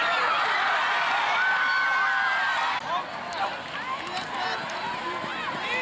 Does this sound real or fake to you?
real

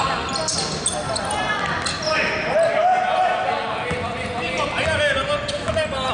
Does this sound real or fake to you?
real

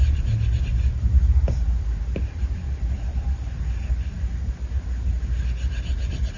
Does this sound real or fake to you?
real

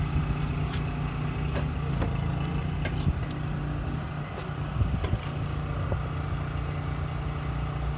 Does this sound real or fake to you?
real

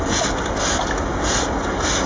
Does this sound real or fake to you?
real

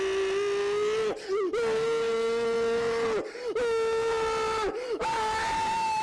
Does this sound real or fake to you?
real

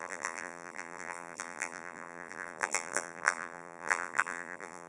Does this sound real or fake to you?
fake